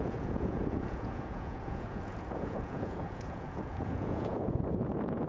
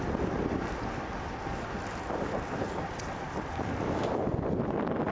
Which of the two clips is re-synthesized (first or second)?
first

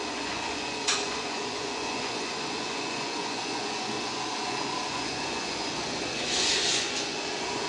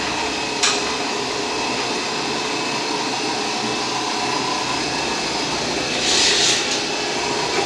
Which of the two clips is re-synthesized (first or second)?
first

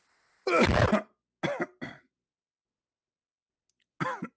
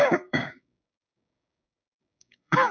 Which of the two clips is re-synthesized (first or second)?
second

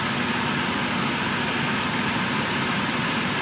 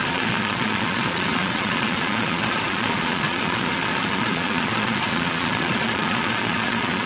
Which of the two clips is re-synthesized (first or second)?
second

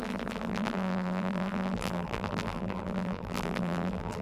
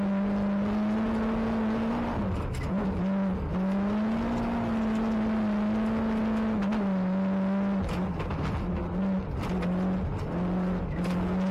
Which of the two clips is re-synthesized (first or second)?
first